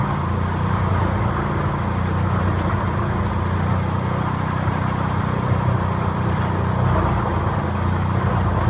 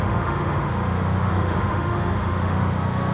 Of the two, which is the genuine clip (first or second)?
first